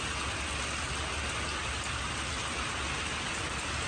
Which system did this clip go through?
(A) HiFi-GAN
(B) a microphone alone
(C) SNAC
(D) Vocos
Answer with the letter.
B